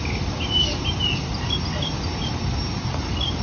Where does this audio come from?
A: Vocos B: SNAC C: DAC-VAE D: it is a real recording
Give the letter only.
D